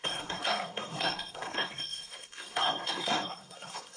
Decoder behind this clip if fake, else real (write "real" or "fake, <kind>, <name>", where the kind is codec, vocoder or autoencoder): fake, codec, SNAC